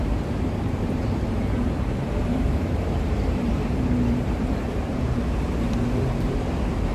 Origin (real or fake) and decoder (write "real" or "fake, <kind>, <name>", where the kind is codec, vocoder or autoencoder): fake, vocoder, BigVGAN v2